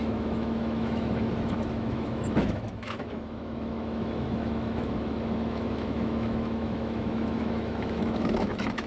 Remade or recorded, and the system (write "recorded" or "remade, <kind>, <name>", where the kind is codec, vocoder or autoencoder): remade, autoencoder, DAC-VAE